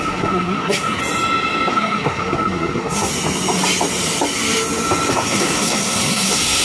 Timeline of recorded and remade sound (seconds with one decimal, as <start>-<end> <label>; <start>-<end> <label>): 0.0-1.0 remade; 1.0-1.7 recorded; 1.7-3.1 remade; 3.1-5.1 recorded; 5.1-6.6 remade